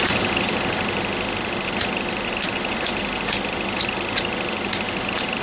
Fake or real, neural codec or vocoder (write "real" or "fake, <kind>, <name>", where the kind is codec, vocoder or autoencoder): real